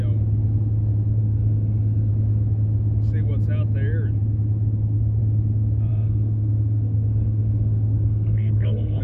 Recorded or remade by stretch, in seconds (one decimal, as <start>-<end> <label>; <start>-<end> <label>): 0.0-1.2 recorded; 1.2-2.1 remade; 2.1-5.9 recorded; 5.9-9.0 remade